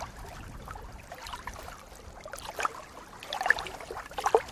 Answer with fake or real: real